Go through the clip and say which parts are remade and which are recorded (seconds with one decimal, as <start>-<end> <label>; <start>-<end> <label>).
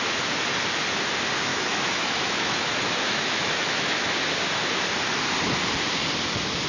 0.0-1.5 recorded; 1.5-4.1 remade; 4.1-6.7 recorded